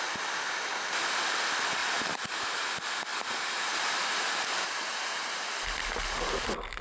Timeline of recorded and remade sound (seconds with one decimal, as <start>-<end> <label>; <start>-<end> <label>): 0.0-1.8 recorded; 1.8-2.5 remade; 2.5-3.1 recorded; 3.1-5.6 remade; 5.6-6.8 recorded